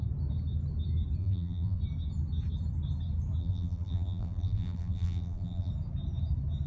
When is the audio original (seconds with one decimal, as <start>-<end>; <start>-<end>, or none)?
0.0-1.2; 1.8-3.4; 5.7-6.7